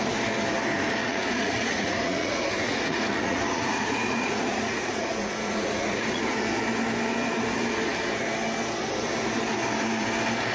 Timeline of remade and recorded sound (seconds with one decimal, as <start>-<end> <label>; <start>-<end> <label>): 0.0-1.0 recorded; 1.0-6.2 remade; 6.2-10.5 recorded

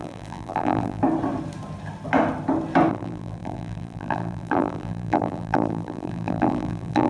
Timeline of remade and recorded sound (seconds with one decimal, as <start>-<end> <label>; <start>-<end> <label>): 0.0-1.0 remade; 1.0-2.9 recorded; 2.9-7.1 remade